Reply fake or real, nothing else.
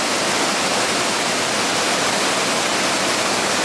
real